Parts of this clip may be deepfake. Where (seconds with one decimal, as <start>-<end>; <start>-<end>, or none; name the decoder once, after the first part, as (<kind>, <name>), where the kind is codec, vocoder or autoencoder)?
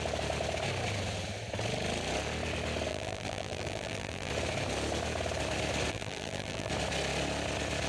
2.9-4.3 (vocoder, BigVGAN v2); 5.9-6.7